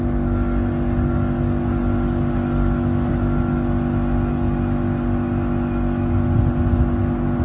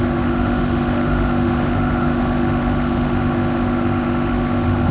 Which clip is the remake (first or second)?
second